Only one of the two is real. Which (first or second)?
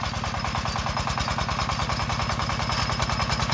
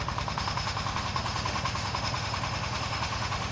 first